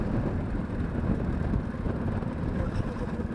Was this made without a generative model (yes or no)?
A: yes